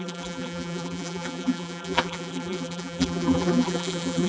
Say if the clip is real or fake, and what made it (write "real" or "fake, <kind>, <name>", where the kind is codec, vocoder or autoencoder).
fake, vocoder, BigVGAN v2